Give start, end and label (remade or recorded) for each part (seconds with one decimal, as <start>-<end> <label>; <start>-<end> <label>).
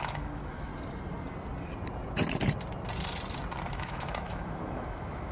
0.0-0.7 remade; 0.7-3.7 recorded; 3.7-5.3 remade